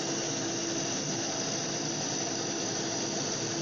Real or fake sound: real